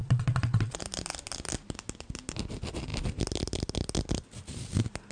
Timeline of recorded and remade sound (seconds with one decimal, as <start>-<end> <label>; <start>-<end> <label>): 0.0-0.8 remade; 0.8-5.1 recorded